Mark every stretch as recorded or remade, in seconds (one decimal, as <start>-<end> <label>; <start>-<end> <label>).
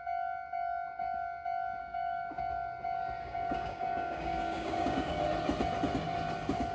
0.0-1.8 recorded; 1.8-2.3 remade; 2.3-3.2 recorded; 3.2-5.2 remade; 5.2-6.7 recorded